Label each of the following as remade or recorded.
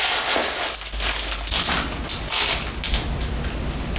recorded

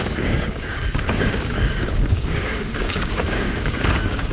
remade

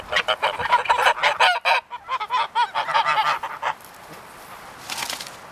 recorded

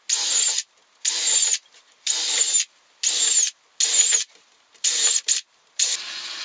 recorded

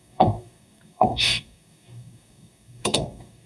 remade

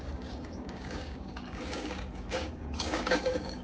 remade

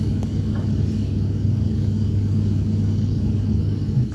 remade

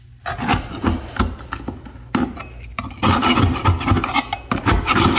recorded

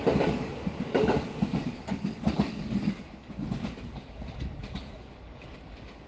remade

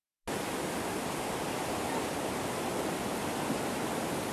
recorded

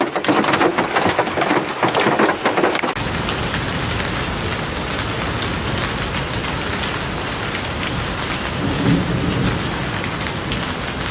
recorded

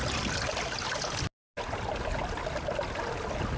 recorded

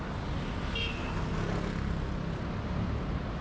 recorded